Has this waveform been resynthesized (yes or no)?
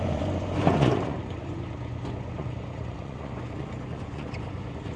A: yes